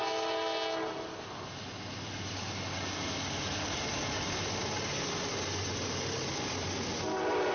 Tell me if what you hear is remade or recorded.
recorded